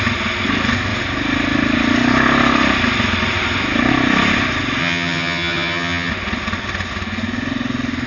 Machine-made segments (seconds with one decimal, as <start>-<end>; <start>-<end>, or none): 4.8-6.1